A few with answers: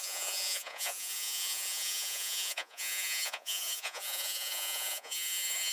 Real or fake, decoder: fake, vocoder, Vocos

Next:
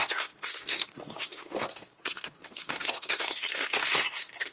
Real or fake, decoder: fake, codec, SNAC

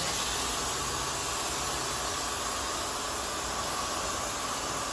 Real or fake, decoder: real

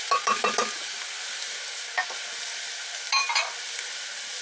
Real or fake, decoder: real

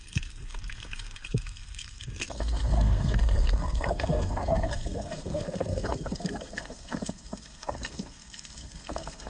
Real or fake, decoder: fake, codec, SNAC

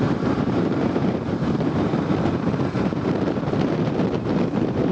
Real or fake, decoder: fake, vocoder, BigVGAN v2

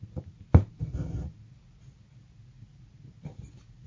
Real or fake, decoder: real